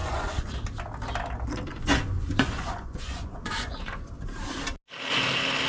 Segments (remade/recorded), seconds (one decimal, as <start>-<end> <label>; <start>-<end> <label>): 0.0-0.5 remade; 0.5-1.7 recorded; 1.7-3.9 remade; 3.9-5.7 recorded